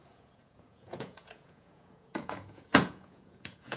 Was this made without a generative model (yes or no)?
no